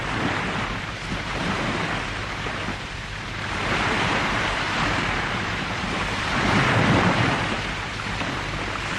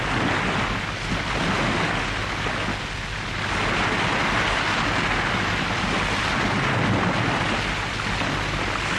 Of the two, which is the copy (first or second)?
first